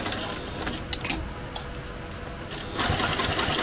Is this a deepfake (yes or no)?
no